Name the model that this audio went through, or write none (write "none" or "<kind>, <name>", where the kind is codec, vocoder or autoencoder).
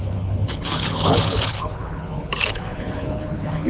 codec, HILCodec